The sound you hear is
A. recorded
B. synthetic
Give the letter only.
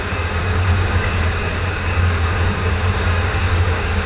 B